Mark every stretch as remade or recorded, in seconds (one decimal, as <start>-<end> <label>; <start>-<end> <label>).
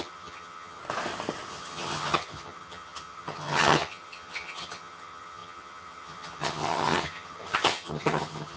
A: 0.0-0.8 remade; 0.8-1.5 recorded; 1.5-8.6 remade